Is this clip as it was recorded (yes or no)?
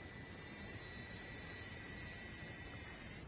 yes